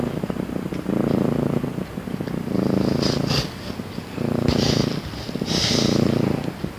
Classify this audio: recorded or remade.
recorded